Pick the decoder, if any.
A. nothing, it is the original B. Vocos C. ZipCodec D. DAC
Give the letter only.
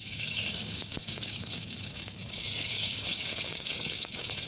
D